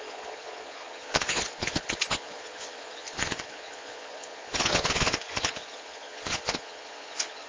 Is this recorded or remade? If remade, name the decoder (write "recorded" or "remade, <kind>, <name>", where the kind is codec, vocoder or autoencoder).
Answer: remade, vocoder, Vocos